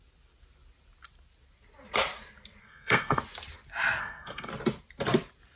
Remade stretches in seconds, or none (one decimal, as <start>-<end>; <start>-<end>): 2.6-3.2; 4.0-4.5